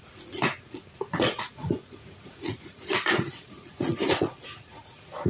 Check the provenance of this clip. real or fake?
fake